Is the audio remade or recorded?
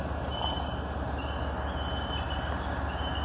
recorded